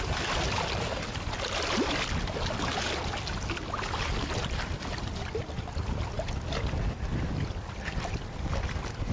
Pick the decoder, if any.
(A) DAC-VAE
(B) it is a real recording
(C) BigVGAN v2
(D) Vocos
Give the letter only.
B